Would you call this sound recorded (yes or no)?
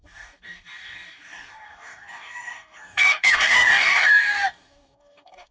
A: no